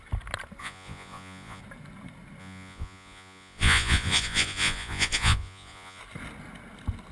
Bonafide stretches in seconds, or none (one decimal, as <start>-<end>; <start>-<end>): 0.0-0.6; 1.6-2.4; 6.0-7.1